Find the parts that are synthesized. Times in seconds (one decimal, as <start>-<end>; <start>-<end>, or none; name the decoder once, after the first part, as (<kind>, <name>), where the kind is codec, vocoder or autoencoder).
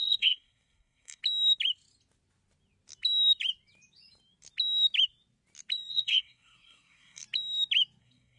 0.0-1.2 (codec, SNAC); 5.9-7.2; 8.0-8.4